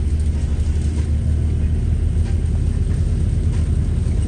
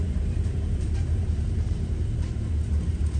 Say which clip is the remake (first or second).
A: second